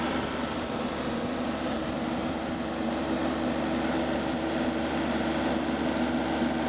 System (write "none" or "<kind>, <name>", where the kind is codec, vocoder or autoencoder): none